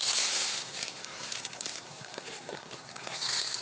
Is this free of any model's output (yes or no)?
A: no